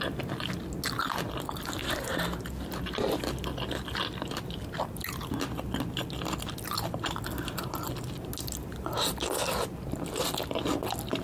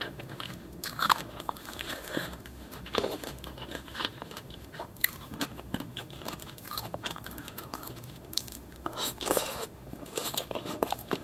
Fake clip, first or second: second